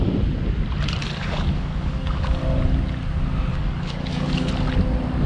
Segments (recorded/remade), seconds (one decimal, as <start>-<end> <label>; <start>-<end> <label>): 0.0-1.2 recorded; 1.2-2.4 remade; 2.4-3.5 recorded; 3.5-4.5 remade; 4.5-5.3 recorded